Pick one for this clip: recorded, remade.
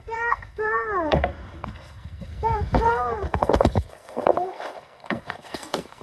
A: remade